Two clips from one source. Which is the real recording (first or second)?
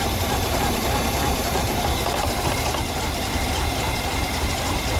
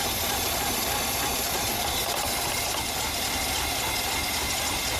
second